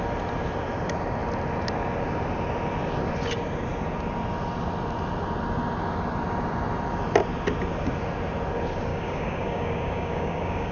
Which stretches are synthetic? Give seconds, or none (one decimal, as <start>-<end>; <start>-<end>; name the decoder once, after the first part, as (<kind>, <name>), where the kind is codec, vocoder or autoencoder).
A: 8.9-10.7 (codec, DAC)